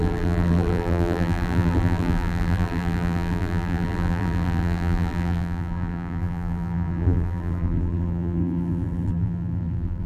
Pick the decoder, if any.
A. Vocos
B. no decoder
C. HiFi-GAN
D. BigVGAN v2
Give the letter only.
D